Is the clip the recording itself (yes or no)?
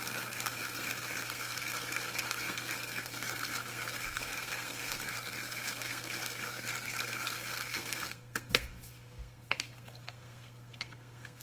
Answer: no